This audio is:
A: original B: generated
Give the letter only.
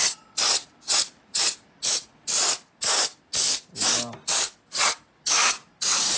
A